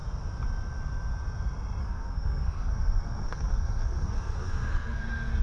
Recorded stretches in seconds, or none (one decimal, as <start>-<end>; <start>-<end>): 0.0-1.8; 5.0-5.4